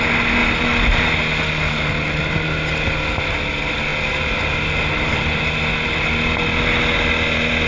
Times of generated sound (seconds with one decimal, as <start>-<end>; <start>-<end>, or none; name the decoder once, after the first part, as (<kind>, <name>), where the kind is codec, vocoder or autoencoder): none